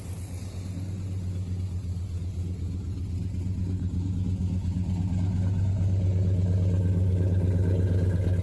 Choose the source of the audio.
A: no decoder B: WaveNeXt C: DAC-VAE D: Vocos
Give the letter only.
A